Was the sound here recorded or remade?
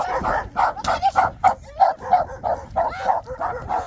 recorded